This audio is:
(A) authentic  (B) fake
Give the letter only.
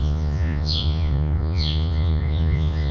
B